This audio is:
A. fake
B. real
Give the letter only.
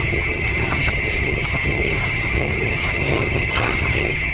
A